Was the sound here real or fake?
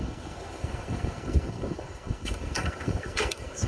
fake